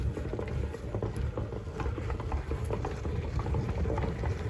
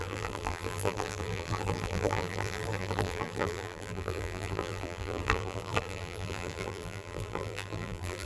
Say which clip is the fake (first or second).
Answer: second